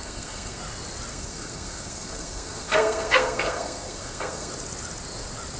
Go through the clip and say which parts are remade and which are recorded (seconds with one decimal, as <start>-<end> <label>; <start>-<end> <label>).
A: 0.0-0.6 remade; 0.6-1.1 recorded; 1.1-4.5 remade; 4.5-5.6 recorded